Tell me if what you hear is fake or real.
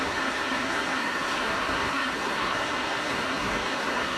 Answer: fake